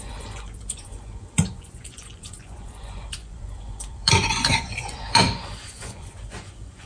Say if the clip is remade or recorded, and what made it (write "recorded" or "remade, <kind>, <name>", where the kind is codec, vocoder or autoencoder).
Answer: remade, vocoder, Vocos